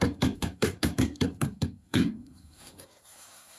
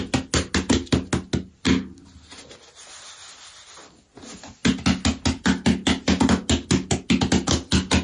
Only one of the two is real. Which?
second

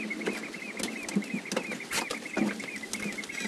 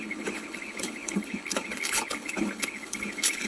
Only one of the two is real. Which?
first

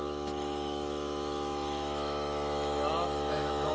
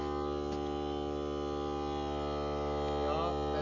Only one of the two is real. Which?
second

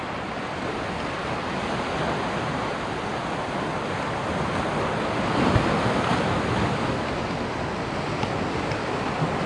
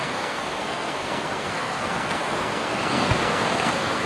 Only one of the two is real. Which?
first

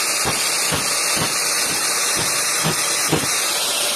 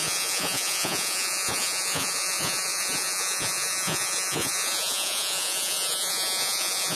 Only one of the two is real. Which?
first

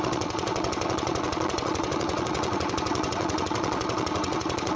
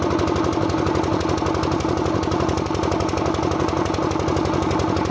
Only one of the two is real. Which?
second